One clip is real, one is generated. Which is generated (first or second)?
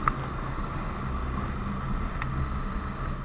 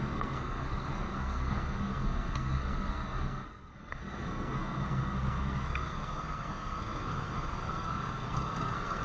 second